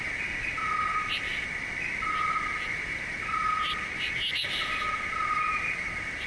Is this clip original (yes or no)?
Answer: yes